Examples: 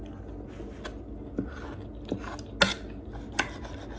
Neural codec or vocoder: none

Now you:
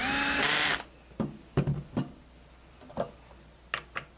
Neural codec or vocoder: none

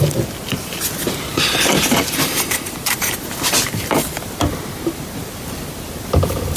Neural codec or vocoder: vocoder, BigVGAN v2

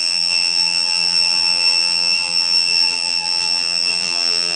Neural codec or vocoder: vocoder, BigVGAN v2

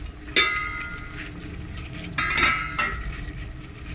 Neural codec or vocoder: none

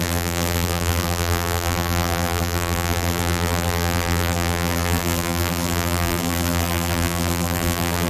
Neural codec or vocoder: vocoder, BigVGAN v2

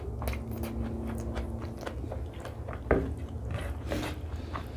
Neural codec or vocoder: none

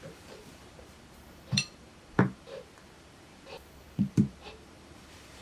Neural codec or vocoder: vocoder, BigVGAN v2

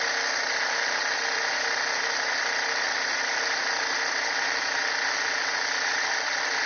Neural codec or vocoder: none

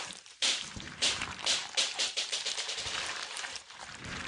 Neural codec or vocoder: vocoder, BigVGAN v2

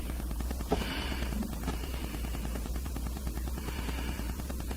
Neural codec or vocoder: vocoder, BigVGAN v2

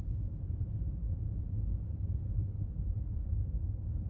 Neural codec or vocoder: vocoder, BigVGAN v2